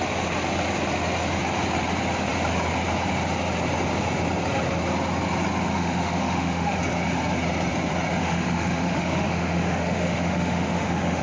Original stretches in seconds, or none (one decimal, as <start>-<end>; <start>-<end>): 0.0-5.7; 6.8-8.2